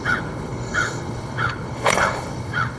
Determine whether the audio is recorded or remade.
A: remade